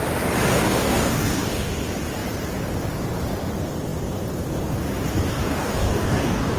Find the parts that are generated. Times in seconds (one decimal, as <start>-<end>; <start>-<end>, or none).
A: 0.6-1.7; 5.4-6.6